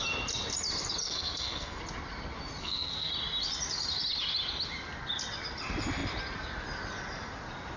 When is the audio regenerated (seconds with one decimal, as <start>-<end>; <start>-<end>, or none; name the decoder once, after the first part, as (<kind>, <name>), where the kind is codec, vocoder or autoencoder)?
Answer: 1.0-1.8 (codec, SNAC); 2.6-3.1